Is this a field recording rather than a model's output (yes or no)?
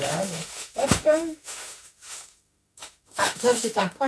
no